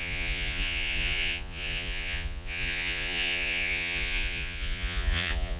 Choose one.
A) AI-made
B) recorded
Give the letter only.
A